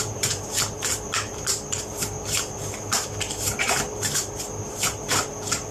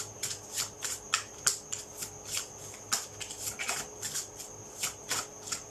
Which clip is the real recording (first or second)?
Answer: second